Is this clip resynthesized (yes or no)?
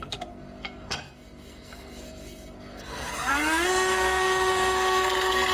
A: yes